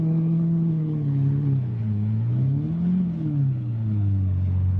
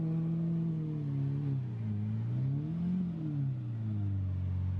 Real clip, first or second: second